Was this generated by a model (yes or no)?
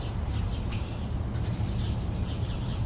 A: yes